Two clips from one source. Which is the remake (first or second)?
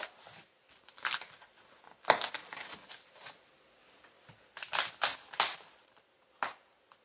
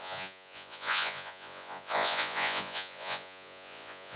second